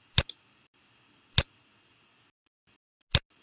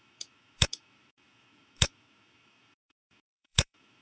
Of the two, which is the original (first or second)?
first